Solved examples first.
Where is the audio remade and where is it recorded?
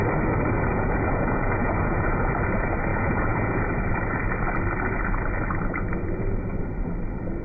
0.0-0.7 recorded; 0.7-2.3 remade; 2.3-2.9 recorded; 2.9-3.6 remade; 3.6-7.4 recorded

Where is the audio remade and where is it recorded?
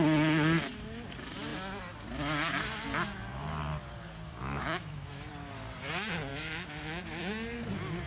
0.0-4.4 recorded; 4.4-5.3 remade; 5.3-6.3 recorded; 6.3-7.2 remade; 7.2-8.1 recorded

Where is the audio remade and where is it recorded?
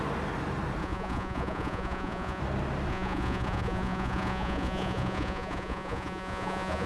0.0-0.8 recorded; 0.8-2.4 remade; 2.4-2.9 recorded; 2.9-6.9 remade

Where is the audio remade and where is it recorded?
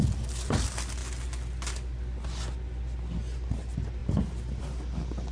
0.0-5.3 recorded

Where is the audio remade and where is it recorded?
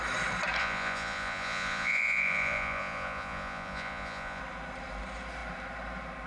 0.0-0.6 recorded; 0.6-4.4 remade; 4.4-6.3 recorded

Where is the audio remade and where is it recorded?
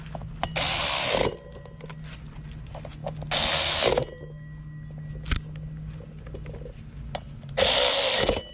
0.0-8.5 recorded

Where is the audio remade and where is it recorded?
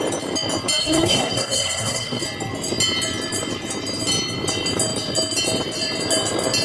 0.0-0.8 recorded; 0.8-2.2 remade; 2.2-6.6 recorded